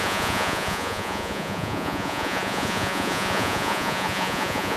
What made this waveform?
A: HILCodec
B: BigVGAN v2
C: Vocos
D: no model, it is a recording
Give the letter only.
C